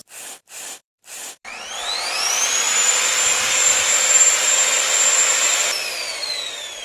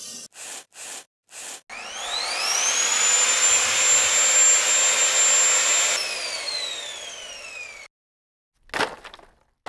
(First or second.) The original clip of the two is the second